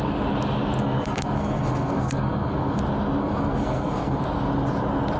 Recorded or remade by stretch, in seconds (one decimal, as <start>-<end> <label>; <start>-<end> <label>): 0.0-0.8 recorded; 0.8-2.8 remade; 2.8-3.2 recorded; 3.2-4.2 remade; 4.2-5.2 recorded